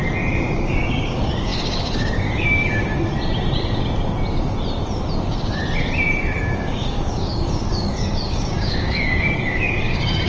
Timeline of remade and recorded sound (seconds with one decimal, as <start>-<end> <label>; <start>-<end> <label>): 0.0-0.6 recorded; 0.6-3.1 remade; 3.1-6.4 recorded; 6.4-10.3 remade